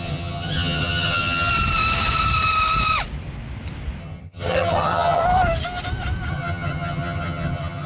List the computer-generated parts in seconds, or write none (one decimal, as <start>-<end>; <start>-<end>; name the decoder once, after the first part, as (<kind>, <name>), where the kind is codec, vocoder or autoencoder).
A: 0.0-1.5 (vocoder, HiFi-GAN); 4.0-5.2; 6.3-7.9